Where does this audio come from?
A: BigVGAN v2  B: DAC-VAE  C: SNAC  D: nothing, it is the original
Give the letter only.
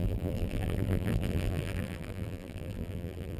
A